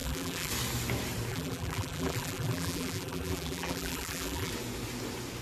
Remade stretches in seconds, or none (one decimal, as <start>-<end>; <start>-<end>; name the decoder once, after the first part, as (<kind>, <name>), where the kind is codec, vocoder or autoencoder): 0.0-0.5 (vocoder, BigVGAN v2); 1.3-4.5